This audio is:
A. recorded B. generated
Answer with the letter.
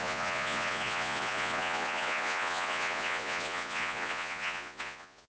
B